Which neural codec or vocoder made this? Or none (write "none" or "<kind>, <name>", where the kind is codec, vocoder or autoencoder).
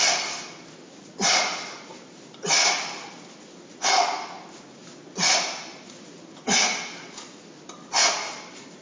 none